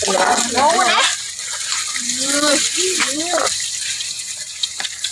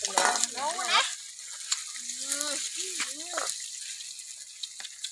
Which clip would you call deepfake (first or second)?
first